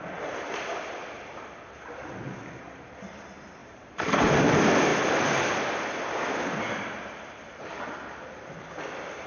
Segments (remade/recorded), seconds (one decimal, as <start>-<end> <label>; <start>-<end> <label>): 0.0-3.6 recorded; 3.6-4.5 remade; 4.5-9.3 recorded